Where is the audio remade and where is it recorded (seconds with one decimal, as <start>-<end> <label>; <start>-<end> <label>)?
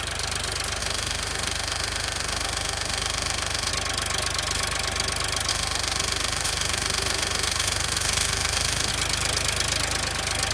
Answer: 0.0-0.8 recorded; 0.8-3.7 remade; 3.7-5.5 recorded; 5.5-8.9 remade; 8.9-10.5 recorded